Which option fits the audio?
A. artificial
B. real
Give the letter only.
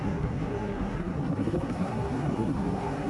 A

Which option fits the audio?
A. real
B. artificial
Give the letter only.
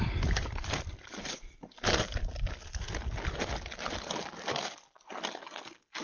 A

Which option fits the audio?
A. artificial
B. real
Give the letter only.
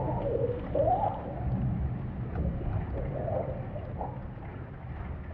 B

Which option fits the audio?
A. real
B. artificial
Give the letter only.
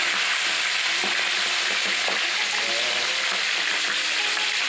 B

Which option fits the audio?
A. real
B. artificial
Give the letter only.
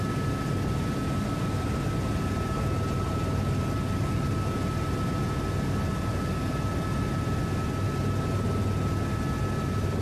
A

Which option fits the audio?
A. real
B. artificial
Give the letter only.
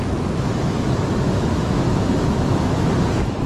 B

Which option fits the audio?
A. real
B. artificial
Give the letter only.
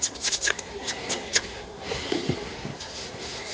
B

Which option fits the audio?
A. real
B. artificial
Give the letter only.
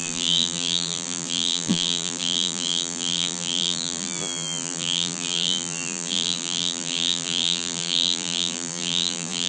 B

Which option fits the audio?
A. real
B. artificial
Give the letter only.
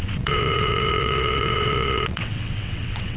B